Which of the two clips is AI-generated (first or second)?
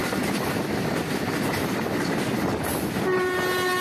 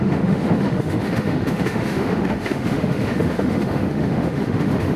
second